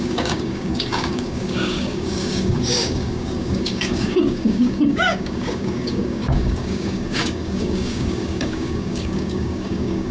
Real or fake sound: fake